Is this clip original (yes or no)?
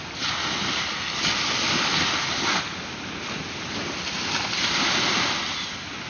yes